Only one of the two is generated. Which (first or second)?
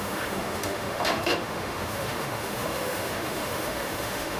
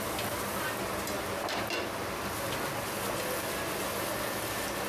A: first